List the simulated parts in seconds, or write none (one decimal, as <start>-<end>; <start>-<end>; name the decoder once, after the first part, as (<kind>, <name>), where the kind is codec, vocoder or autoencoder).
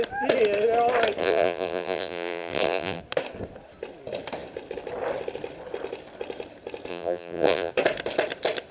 1.2-3.0 (vocoder, BigVGAN v2); 6.9-7.7